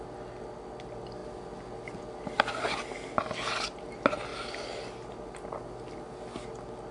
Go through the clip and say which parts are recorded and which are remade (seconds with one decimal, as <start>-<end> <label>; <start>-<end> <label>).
0.0-6.9 recorded